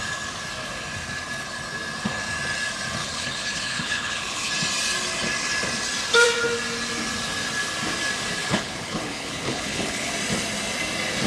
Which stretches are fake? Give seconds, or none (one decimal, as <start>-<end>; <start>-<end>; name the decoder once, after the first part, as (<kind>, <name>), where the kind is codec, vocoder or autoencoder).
3.0-4.5 (codec, HILCodec); 8.4-10.1